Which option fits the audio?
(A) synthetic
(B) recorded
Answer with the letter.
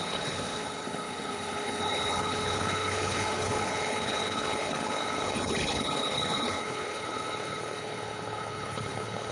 A